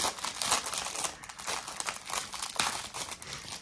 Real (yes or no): yes